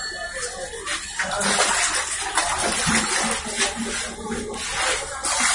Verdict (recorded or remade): recorded